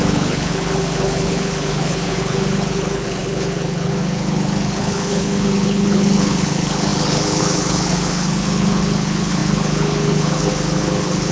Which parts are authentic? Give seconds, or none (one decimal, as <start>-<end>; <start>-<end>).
none